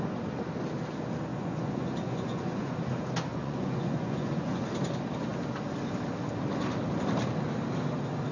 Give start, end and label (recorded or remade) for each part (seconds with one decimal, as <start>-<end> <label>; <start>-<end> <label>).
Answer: 0.0-1.3 recorded; 1.3-2.7 remade; 2.7-3.3 recorded; 3.3-4.6 remade; 4.6-8.3 recorded